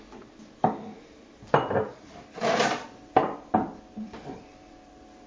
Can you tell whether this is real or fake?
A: fake